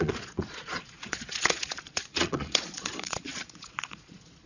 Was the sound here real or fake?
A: fake